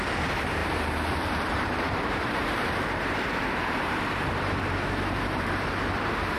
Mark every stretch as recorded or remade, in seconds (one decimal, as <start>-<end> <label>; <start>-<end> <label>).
0.0-6.4 remade